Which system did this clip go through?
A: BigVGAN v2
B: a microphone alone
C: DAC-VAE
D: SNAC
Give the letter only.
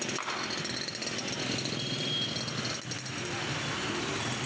B